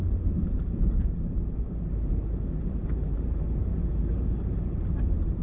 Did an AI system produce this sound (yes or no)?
yes